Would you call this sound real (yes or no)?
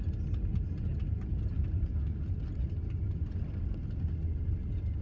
yes